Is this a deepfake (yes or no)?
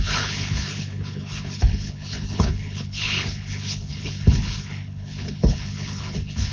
yes